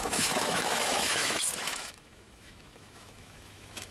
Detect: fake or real fake